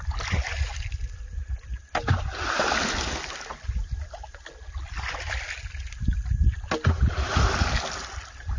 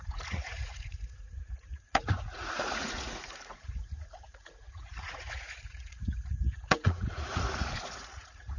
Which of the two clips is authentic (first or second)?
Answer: first